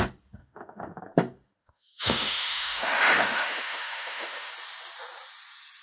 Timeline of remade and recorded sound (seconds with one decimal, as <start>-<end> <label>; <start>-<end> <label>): 0.0-0.4 recorded; 0.4-1.0 remade; 1.0-1.6 recorded; 1.6-4.5 remade; 4.5-5.8 recorded